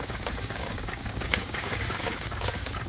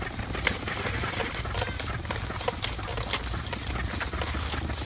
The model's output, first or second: first